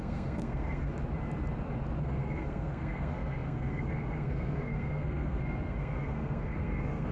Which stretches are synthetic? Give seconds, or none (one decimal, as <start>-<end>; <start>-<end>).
0.0-0.9; 2.0-7.1

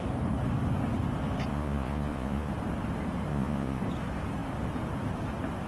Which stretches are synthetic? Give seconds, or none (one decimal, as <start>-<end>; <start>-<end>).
1.5-2.5; 3.3-3.8

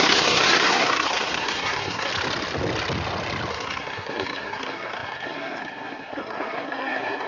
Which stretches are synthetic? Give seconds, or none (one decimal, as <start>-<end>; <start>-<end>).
0.0-2.1; 3.5-7.3

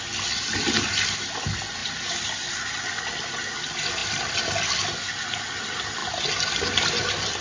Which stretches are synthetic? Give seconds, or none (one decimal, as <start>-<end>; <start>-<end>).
none

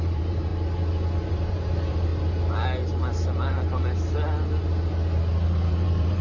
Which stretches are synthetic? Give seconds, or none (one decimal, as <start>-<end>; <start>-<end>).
0.0-0.5; 1.3-2.1; 5.8-6.2

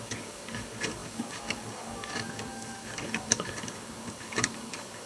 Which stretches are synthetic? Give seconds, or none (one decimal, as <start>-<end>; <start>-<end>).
0.0-5.1

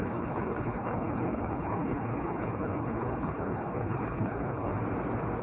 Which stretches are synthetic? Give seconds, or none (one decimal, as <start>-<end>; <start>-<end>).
0.0-4.8